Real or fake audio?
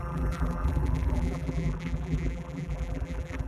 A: fake